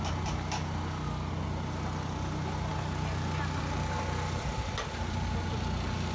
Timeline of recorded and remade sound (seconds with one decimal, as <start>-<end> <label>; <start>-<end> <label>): 0.0-6.1 recorded